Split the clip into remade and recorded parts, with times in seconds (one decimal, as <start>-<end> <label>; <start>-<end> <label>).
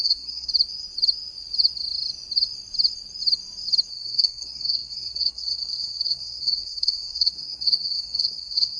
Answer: 0.0-0.5 remade; 0.5-3.9 recorded; 3.9-8.8 remade